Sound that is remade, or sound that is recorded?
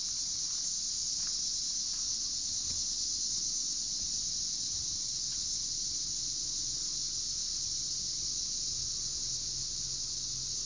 recorded